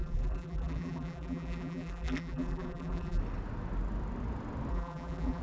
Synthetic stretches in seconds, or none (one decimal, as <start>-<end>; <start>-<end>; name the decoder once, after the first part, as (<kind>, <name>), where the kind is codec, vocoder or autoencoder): 0.0-3.2 (vocoder, BigVGAN v2); 4.7-5.4